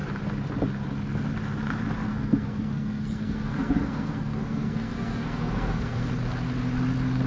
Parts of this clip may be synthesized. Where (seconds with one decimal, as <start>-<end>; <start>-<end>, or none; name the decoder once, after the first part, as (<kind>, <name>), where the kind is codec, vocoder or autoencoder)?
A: 2.1-6.1 (codec, SNAC)